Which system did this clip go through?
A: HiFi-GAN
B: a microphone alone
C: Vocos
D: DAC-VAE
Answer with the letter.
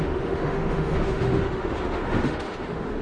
D